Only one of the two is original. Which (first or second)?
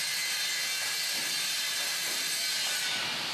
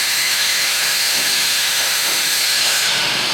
first